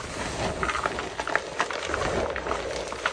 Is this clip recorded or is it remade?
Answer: recorded